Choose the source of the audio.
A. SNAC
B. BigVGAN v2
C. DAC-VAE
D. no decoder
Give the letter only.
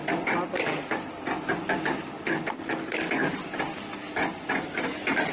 D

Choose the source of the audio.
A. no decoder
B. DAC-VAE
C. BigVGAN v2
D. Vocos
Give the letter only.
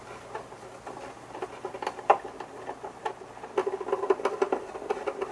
A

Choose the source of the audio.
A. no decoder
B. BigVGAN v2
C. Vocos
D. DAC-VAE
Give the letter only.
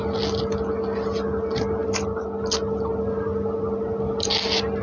A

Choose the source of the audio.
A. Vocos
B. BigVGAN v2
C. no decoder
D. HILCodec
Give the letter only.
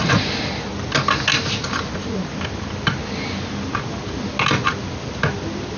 C